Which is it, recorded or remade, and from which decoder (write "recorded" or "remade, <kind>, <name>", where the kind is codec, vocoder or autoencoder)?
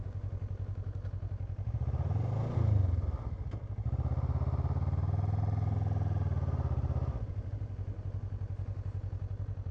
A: recorded